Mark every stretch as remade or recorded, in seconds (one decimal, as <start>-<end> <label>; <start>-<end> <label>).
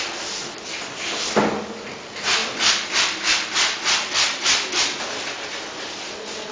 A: 0.0-6.5 recorded